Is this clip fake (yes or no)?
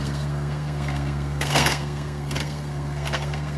yes